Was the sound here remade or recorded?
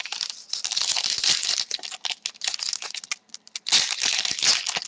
recorded